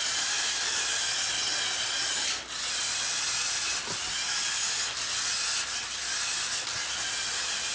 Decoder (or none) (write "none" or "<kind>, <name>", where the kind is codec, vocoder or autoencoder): none